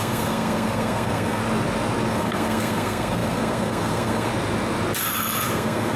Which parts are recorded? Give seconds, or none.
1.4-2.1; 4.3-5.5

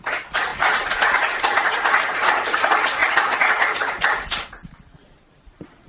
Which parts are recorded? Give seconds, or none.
0.0-5.9

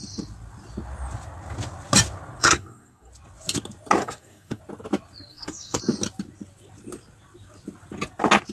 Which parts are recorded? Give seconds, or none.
0.0-2.4; 3.1-4.0; 4.6-5.3; 5.8-8.5

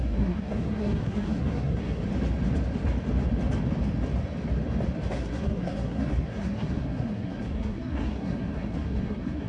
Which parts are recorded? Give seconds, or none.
2.0-5.1

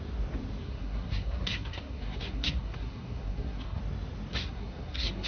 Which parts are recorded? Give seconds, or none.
0.0-0.6; 3.8-4.3

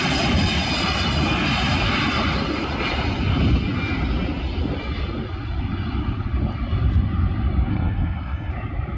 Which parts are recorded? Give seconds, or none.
0.0-7.7; 8.5-9.0

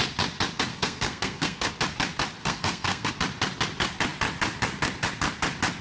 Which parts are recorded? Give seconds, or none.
0.0-0.7; 1.7-2.4; 3.1-5.8